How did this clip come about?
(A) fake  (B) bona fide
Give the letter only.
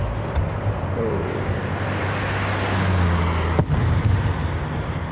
B